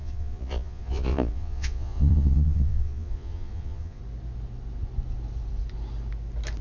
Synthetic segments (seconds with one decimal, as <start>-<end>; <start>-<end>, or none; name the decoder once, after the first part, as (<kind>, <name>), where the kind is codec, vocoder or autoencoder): 0.0-4.0 (vocoder, Vocos)